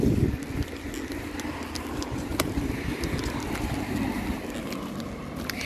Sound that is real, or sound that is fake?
real